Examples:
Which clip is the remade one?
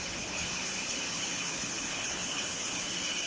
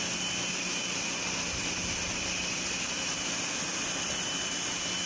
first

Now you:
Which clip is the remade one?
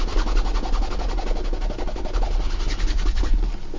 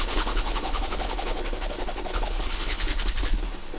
second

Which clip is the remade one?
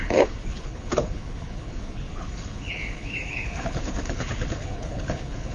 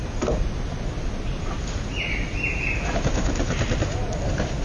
first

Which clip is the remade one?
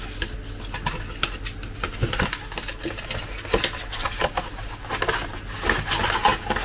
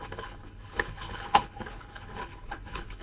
second